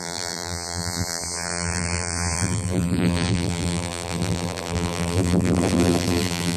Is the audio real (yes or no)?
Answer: no